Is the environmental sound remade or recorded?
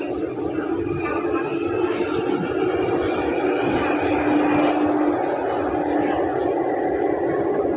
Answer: recorded